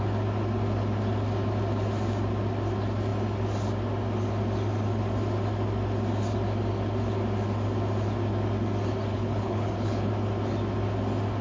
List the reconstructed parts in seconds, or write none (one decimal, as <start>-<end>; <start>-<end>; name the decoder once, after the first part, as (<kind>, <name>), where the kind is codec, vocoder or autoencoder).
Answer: 9.1-10.1 (codec, HILCodec)